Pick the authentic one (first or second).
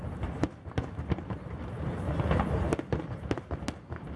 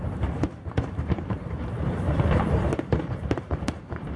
first